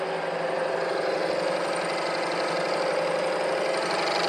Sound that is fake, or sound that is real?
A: real